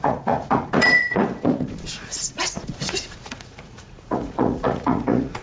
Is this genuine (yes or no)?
no